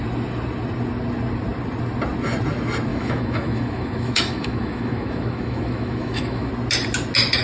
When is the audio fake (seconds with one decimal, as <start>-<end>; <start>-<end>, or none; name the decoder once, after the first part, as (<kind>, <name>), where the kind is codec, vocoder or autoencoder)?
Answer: 2.9-6.5 (autoencoder, DAC-VAE)